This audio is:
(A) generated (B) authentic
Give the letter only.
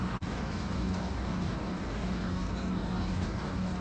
A